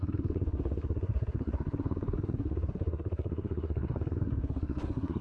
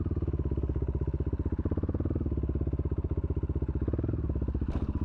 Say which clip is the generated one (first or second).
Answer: first